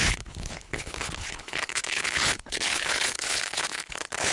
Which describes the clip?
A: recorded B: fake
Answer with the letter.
B